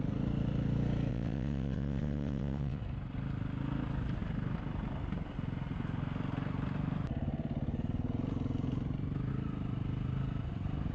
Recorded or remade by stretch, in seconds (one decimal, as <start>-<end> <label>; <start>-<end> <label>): 0.0-1.1 recorded; 1.1-2.8 remade; 2.8-10.9 recorded